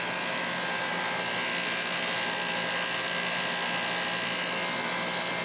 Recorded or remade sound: recorded